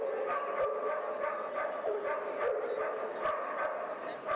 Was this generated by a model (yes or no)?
no